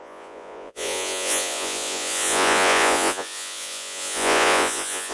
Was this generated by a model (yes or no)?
yes